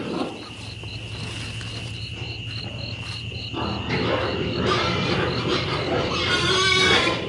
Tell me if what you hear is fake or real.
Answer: real